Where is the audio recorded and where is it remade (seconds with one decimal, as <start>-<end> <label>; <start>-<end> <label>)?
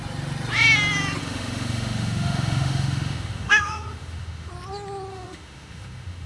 0.0-1.2 recorded; 1.2-4.5 remade; 4.5-5.1 recorded; 5.1-6.3 remade